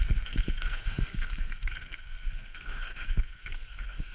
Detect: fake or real fake